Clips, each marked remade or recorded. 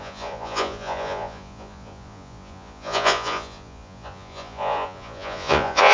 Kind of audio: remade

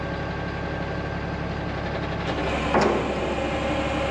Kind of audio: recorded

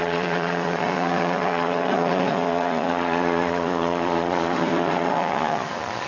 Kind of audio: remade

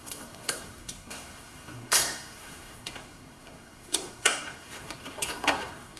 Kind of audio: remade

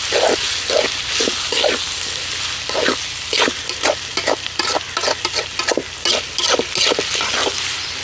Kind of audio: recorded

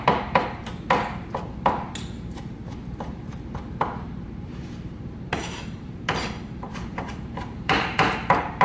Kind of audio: remade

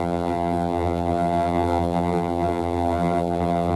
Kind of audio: remade